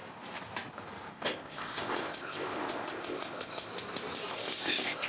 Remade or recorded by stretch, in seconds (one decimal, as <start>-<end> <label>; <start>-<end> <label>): 0.0-1.1 recorded; 1.1-3.7 remade; 3.7-4.3 recorded; 4.3-5.1 remade